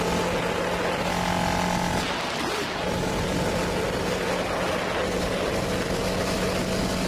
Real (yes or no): yes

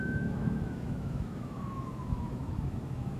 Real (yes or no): no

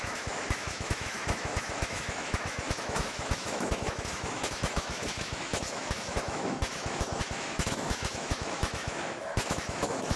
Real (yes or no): no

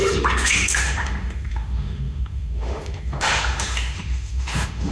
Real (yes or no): no